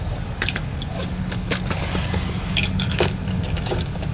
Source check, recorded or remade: remade